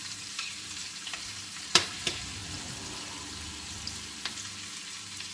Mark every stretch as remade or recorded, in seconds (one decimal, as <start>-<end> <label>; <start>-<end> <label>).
0.0-2.4 remade; 2.4-4.8 recorded; 4.8-5.3 remade

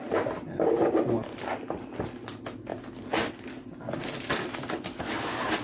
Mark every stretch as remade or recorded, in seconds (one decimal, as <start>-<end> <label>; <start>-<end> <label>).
0.0-5.6 recorded

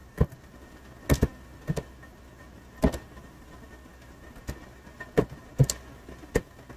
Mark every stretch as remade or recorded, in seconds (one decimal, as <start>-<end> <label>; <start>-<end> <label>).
0.0-0.5 remade; 0.5-6.8 recorded

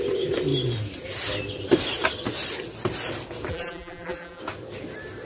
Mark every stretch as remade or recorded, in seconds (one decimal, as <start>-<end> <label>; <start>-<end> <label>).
0.0-3.5 recorded; 3.5-4.4 remade; 4.4-5.2 recorded

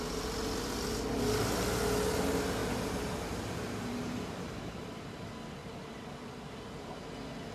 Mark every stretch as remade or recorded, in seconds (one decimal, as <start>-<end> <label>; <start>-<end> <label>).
0.0-2.6 recorded; 2.6-4.9 remade; 4.9-5.6 recorded; 5.6-6.5 remade; 6.5-7.5 recorded

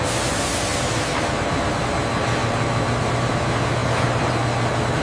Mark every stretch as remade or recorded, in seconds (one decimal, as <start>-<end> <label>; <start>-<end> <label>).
0.0-2.4 recorded; 2.4-3.3 remade; 3.3-5.0 recorded

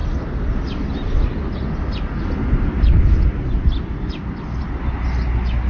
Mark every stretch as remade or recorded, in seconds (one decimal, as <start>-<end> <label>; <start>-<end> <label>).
0.0-5.7 recorded

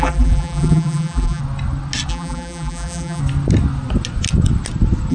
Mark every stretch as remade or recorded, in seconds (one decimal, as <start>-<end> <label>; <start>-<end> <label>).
0.0-1.4 remade; 1.4-2.1 recorded; 2.1-3.2 remade; 3.2-5.1 recorded